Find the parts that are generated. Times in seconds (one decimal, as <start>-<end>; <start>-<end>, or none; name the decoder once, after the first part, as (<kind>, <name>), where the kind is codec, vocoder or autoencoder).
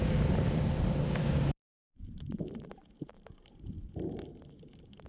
0.0-5.1 (vocoder, BigVGAN v2)